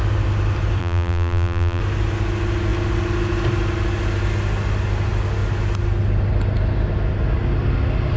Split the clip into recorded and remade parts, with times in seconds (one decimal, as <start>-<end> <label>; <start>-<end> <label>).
0.0-0.8 recorded; 0.8-1.8 remade; 1.8-8.2 recorded